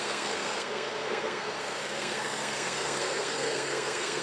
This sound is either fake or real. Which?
fake